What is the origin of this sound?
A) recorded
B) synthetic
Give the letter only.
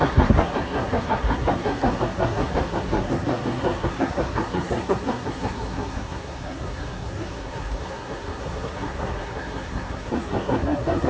B